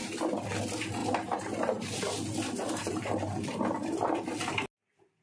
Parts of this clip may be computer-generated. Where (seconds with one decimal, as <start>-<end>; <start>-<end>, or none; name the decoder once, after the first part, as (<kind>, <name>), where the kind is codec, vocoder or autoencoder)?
1.0-2.0 (vocoder, BigVGAN v2); 2.8-3.6